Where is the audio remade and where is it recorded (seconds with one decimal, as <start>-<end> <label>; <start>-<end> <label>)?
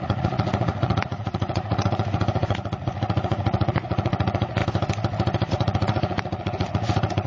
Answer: 0.0-4.6 remade; 4.6-5.5 recorded; 5.5-7.3 remade